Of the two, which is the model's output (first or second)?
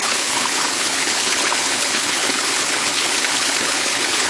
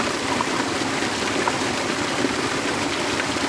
first